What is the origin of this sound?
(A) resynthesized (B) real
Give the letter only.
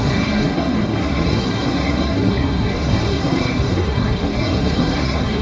A